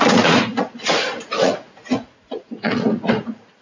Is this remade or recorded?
remade